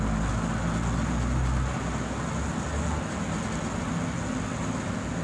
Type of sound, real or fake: real